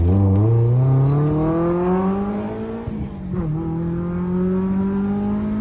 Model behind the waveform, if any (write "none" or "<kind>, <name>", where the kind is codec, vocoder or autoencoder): none